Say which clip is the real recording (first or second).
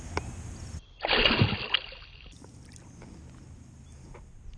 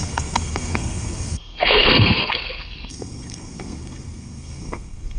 first